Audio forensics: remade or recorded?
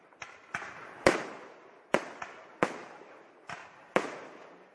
recorded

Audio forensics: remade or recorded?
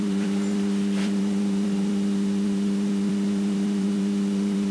remade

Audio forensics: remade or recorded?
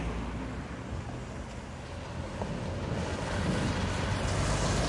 recorded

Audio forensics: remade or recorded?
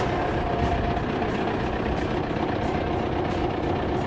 recorded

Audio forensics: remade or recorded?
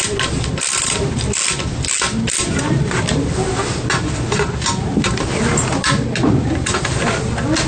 recorded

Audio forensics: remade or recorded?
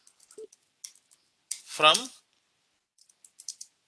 recorded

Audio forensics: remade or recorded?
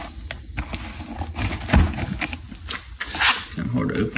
recorded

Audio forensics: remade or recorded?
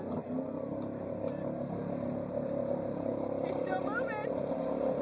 remade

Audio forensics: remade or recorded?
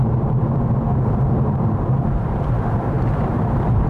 remade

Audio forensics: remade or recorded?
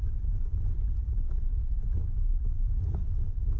recorded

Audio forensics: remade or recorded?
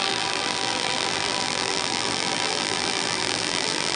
remade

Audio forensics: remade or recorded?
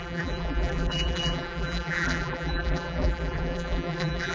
remade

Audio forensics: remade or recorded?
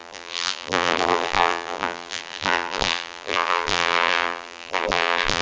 remade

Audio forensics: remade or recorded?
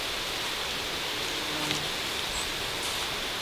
recorded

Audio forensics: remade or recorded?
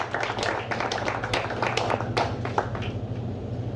recorded